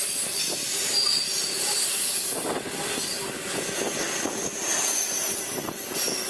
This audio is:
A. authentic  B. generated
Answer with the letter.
A